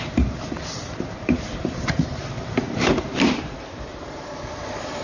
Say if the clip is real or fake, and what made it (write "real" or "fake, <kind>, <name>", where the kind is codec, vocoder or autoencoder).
fake, vocoder, BigVGAN v2